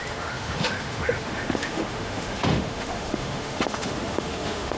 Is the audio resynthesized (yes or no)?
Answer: yes